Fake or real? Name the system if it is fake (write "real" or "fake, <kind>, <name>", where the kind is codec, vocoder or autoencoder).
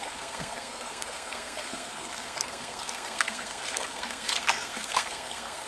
fake, codec, SNAC